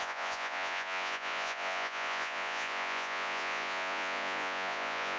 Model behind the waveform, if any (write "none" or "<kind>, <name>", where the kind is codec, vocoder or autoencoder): vocoder, Vocos